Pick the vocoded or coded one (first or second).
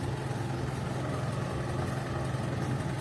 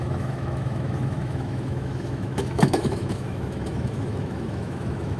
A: second